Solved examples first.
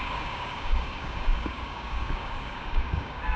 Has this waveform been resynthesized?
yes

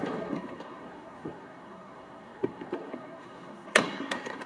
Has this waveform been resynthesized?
yes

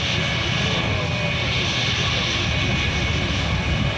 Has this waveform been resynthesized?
no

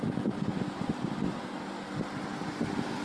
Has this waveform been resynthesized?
no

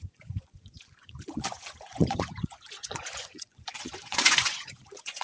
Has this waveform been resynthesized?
yes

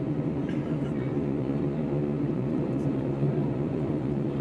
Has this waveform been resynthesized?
yes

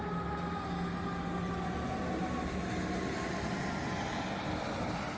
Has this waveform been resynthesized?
no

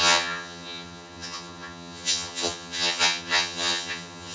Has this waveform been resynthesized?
yes